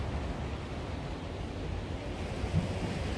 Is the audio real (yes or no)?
yes